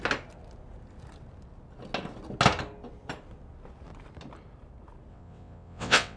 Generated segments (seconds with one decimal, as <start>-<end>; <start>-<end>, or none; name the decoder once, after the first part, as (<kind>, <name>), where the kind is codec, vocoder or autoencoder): 5.1-6.2 (vocoder, WaveNeXt)

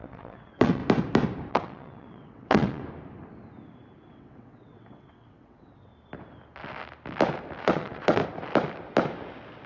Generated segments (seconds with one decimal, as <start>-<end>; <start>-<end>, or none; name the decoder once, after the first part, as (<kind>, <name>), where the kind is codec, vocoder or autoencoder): 0.0-0.8 (vocoder, WaveNeXt); 1.5-2.8; 4.1-5.9; 7.6-8.2

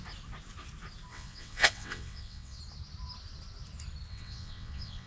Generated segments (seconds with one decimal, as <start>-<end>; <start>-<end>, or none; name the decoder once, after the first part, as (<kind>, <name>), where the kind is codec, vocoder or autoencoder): 1.1-2.6 (vocoder, WaveNeXt); 4.1-5.1

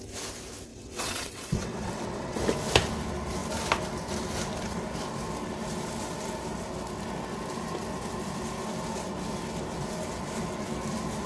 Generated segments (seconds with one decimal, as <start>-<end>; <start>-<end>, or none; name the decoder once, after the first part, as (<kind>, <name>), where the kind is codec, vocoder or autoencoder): 0.7-2.4 (vocoder, WaveNeXt)

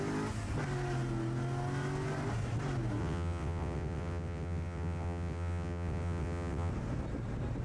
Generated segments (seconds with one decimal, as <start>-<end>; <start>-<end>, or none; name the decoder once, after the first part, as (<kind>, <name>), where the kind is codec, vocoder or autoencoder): 3.0-6.7 (vocoder, WaveNeXt)

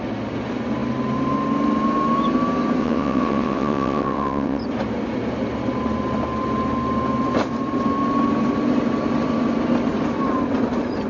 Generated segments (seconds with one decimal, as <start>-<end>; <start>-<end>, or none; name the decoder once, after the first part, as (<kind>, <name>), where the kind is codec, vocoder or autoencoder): 2.8-4.6 (vocoder, WaveNeXt)

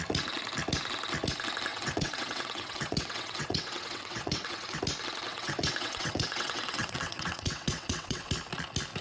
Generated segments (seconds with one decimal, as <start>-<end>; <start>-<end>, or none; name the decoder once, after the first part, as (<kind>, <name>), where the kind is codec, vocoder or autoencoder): 1.7-4.8 (vocoder, WaveNeXt); 5.3-8.3

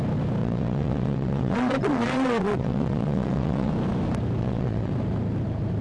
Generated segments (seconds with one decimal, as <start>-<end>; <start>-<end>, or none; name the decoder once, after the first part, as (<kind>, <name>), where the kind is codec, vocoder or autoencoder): 0.4-3.7 (vocoder, WaveNeXt); 4.4-4.9